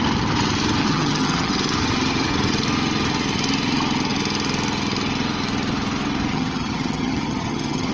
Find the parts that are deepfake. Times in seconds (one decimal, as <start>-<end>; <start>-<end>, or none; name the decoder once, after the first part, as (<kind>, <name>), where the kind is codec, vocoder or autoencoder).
0.8-1.5 (vocoder, HiFi-GAN); 6.3-7.9